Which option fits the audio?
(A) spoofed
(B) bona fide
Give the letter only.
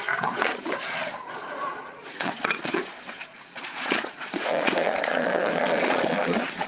A